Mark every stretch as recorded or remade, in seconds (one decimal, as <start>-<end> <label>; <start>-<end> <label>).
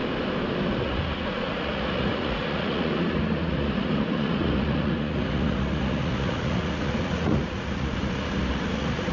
0.0-0.7 recorded; 0.7-9.1 remade